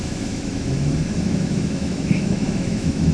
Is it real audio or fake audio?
fake